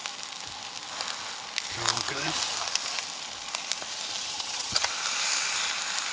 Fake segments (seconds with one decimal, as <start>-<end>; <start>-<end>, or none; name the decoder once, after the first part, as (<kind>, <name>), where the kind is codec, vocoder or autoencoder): 4.2-4.9 (vocoder, HiFi-GAN)